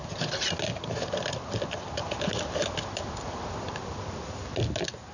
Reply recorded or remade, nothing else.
recorded